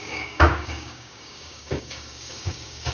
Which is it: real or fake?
fake